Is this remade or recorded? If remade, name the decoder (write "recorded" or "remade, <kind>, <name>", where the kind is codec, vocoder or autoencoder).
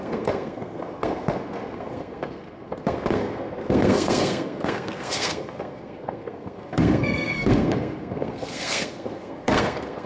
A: remade, codec, SNAC